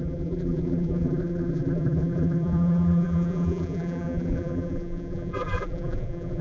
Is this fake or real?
fake